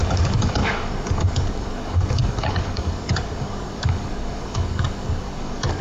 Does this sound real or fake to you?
fake